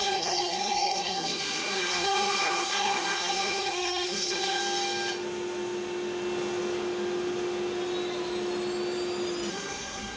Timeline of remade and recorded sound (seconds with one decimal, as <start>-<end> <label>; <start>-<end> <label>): 0.0-4.6 remade; 4.6-9.5 recorded; 9.5-10.2 remade